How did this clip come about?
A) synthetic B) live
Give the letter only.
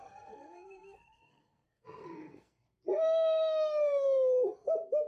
A